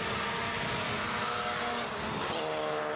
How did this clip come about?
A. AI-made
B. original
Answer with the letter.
B